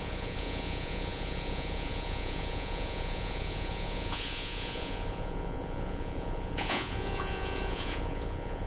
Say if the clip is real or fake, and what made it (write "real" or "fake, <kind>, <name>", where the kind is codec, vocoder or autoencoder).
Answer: fake, vocoder, Vocos